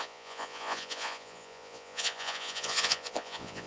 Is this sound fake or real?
fake